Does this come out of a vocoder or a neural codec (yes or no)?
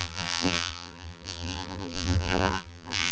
yes